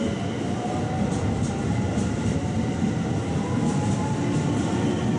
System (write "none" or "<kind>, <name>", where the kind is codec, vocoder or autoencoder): none